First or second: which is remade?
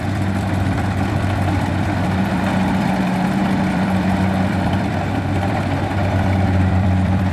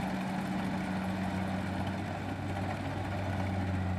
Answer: first